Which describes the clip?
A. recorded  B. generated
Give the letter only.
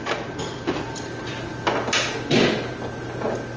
A